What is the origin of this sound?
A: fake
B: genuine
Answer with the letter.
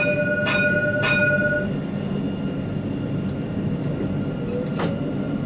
B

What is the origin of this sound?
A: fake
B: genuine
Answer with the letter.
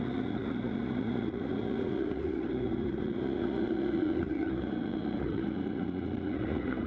A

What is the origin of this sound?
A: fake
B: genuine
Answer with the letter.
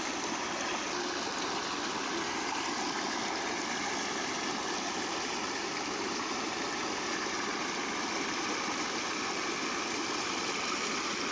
B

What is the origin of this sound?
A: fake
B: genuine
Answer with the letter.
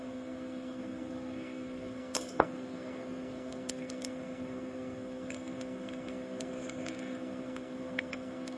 A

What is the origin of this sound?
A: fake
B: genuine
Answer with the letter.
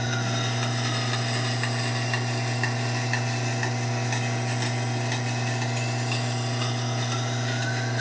B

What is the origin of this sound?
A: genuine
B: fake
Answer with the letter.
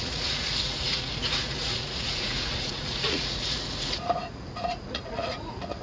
B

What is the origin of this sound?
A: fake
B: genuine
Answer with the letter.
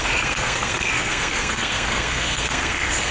A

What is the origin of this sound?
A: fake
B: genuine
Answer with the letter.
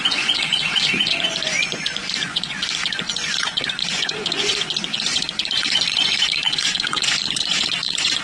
A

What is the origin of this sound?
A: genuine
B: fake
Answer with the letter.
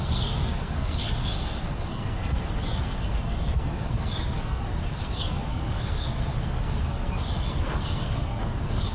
B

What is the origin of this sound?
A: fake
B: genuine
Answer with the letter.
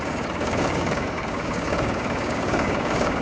A